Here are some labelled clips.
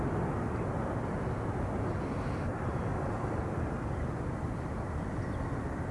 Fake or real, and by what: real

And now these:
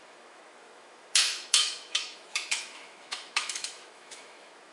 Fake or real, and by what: fake, autoencoder, DAC-VAE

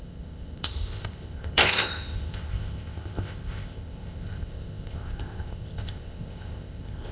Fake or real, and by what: fake, codec, ZipCodec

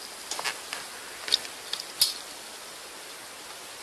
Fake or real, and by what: real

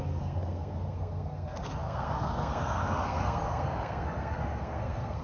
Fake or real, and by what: fake, codec, SNAC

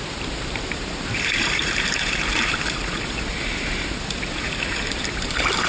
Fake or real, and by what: fake, vocoder, BigVGAN v2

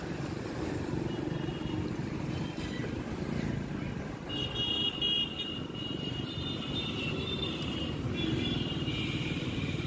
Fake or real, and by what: real